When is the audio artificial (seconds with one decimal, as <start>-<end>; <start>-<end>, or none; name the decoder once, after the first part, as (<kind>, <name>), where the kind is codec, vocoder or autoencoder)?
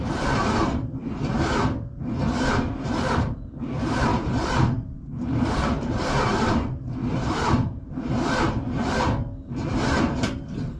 4.1-6.0 (vocoder, BigVGAN v2); 7.0-8.9